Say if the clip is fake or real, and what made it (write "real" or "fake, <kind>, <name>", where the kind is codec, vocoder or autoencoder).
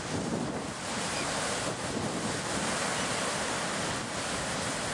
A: real